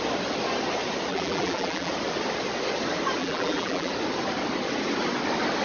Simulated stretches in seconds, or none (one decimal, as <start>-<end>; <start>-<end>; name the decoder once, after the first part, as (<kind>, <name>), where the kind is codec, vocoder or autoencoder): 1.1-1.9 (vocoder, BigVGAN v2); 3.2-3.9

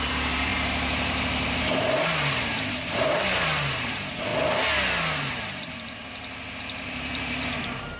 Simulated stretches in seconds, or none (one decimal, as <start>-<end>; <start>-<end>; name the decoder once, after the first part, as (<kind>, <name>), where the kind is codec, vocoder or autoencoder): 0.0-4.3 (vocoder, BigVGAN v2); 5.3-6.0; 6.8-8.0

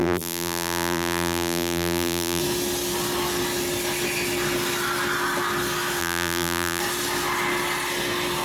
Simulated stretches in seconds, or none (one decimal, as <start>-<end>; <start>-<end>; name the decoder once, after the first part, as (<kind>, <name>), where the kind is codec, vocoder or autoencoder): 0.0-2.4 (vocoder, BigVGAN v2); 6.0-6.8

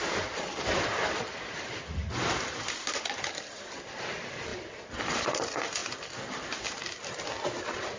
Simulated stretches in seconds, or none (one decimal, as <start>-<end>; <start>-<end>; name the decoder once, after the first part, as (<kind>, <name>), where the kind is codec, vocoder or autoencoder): 0.0-4.5 (vocoder, BigVGAN v2); 5.0-8.0

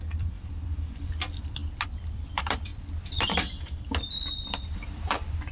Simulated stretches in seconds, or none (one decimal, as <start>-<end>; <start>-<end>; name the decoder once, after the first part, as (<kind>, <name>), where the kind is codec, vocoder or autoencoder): 0.0-5.5 (vocoder, BigVGAN v2)

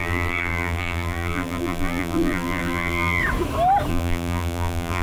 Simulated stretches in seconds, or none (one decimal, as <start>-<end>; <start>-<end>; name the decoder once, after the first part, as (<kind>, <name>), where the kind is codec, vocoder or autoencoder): 0.0-3.2 (vocoder, BigVGAN v2); 3.9-5.0